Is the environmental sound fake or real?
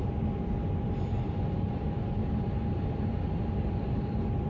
real